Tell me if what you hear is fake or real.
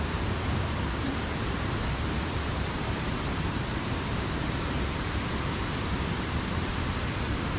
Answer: fake